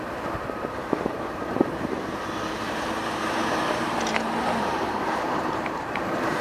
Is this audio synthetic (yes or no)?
yes